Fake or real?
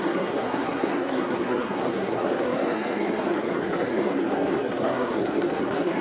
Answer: fake